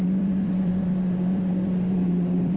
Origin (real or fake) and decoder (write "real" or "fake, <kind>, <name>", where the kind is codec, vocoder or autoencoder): fake, vocoder, BigVGAN v2